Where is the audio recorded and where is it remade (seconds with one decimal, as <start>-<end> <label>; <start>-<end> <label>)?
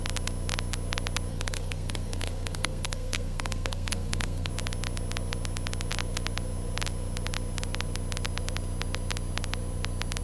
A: 0.0-1.3 recorded; 1.3-4.5 remade; 4.5-10.2 recorded